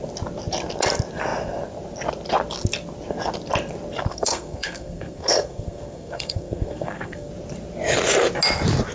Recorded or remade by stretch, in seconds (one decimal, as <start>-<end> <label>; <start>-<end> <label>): 0.0-4.1 recorded; 4.1-7.3 remade; 7.3-8.9 recorded